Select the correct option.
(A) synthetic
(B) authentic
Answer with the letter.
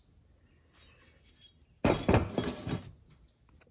B